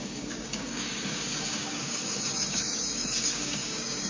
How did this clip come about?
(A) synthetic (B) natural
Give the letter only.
A